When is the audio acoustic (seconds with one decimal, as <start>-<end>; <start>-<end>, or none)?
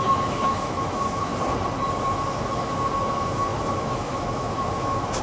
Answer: 1.3-2.0